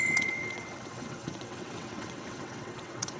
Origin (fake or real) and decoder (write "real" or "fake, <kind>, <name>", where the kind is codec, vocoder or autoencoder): fake, vocoder, WaveNeXt